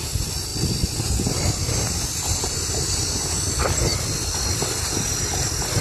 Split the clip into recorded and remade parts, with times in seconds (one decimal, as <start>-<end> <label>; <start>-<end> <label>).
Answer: 0.0-5.8 recorded